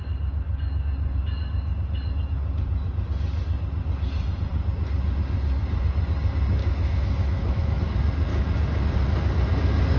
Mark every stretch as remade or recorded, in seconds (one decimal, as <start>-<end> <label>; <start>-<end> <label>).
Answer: 0.0-6.6 recorded; 6.6-7.8 remade; 7.8-10.0 recorded